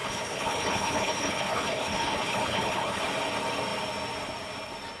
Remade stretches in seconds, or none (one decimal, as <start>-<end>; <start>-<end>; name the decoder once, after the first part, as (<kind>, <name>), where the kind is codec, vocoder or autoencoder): 0.0-3.0 (codec, HILCodec)